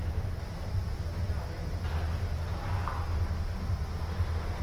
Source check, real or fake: real